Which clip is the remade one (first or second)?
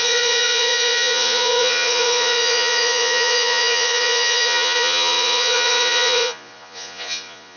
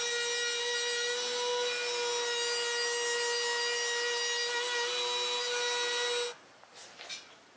first